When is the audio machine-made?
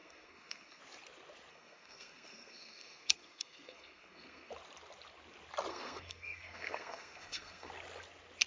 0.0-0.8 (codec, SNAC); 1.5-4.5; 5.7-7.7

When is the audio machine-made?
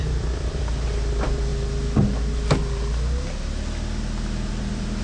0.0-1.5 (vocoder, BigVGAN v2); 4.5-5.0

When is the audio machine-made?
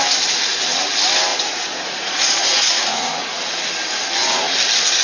1.3-3.4 (vocoder, Vocos)